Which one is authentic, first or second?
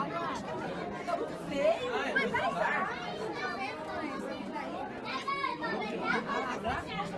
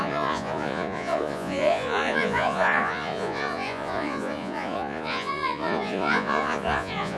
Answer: first